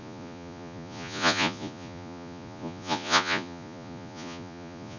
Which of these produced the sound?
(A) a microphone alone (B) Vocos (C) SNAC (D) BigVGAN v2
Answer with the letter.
B